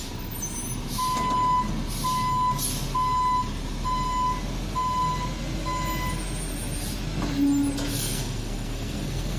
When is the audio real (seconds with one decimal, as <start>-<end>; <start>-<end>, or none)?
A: 0.0-7.9